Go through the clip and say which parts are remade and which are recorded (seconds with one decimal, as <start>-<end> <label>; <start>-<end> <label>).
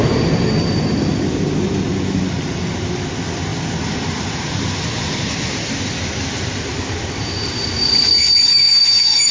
0.0-8.5 recorded; 8.5-9.3 remade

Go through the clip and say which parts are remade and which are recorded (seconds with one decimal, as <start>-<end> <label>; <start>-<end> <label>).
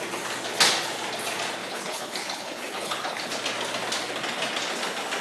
0.0-1.6 recorded; 1.6-3.3 remade; 3.3-5.2 recorded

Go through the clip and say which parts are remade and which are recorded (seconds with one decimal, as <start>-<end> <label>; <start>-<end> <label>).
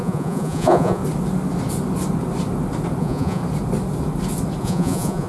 0.0-1.0 remade; 1.0-3.0 recorded; 3.0-3.4 remade; 3.4-4.6 recorded; 4.6-5.3 remade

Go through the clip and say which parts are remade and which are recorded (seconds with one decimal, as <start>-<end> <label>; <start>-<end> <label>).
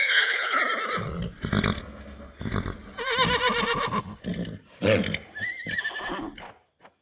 0.0-0.6 remade; 0.6-7.0 recorded